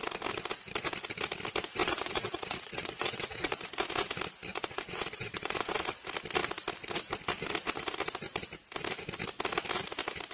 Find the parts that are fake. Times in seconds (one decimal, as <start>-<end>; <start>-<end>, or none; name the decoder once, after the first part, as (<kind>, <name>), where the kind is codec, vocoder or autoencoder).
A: 1.8-3.5 (vocoder, WaveNeXt); 4.5-5.7